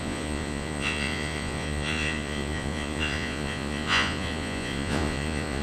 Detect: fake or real fake